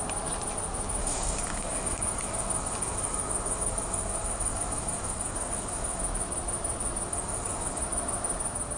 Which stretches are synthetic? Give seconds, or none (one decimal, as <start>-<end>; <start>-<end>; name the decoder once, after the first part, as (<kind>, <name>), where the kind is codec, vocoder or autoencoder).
1.0-6.0 (codec, DAC); 7.1-7.8